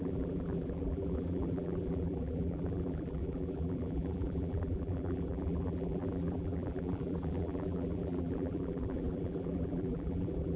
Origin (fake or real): fake